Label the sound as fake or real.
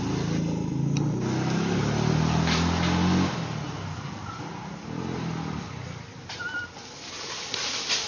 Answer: real